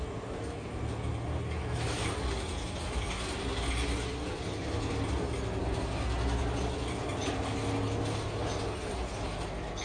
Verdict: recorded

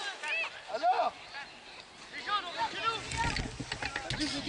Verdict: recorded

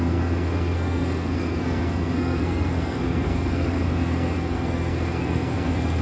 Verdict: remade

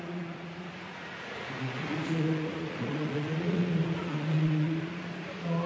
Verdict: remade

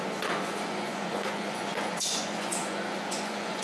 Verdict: remade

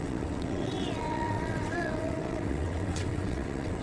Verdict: remade